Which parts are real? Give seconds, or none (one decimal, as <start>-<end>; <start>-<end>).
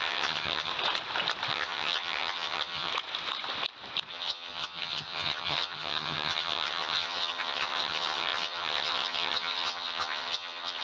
0.7-1.5; 2.9-4.1